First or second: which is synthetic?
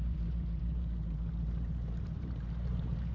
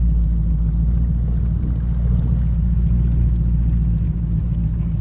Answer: first